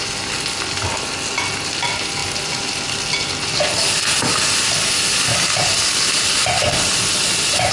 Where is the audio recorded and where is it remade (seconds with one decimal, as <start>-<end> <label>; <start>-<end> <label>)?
0.0-7.7 recorded